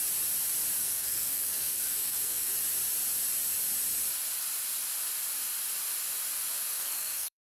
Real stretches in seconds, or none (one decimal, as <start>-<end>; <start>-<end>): 0.0-0.8; 2.5-6.8